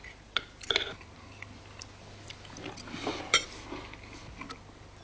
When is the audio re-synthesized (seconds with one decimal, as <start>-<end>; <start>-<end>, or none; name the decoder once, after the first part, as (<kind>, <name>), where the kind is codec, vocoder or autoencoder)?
none